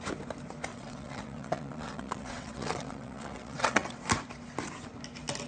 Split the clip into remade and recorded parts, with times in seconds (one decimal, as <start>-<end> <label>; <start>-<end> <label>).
0.0-0.7 recorded; 0.7-4.0 remade; 4.0-5.5 recorded